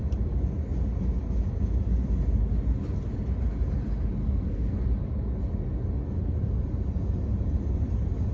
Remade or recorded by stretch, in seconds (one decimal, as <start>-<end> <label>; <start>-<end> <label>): 0.0-4.2 recorded; 4.2-4.8 remade; 4.8-8.3 recorded